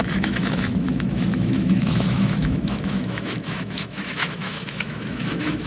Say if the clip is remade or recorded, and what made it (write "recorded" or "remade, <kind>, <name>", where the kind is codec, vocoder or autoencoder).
remade, autoencoder, DAC-VAE